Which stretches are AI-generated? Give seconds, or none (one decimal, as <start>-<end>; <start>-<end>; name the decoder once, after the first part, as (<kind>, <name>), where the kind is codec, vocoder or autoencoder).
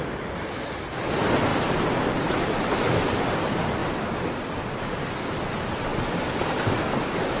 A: 5.9-7.4 (vocoder, BigVGAN v2)